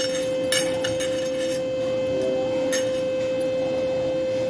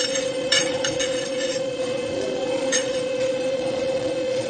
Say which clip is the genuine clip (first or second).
first